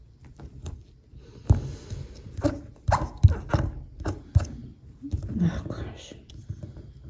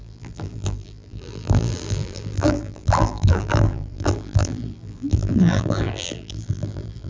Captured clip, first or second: first